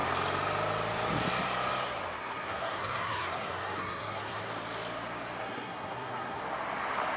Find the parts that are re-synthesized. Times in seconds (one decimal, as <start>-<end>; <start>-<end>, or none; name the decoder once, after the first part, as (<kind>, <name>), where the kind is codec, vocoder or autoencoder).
2.2-4.5 (codec, SNAC); 5.4-6.4